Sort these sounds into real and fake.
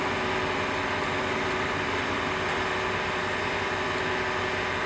real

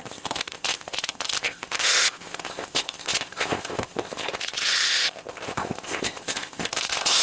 fake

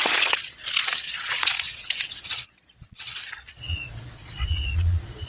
fake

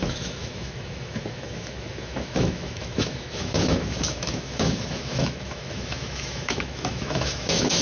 fake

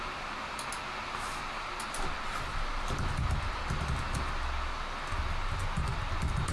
real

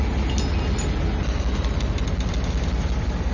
real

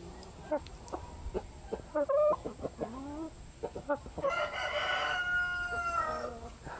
real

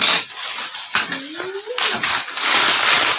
real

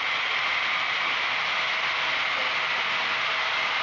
real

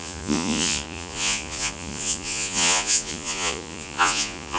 fake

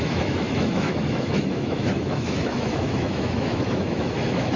fake